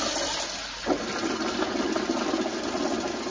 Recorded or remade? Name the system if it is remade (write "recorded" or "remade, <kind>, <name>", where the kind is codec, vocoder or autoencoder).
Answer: recorded